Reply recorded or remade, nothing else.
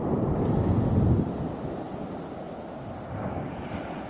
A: recorded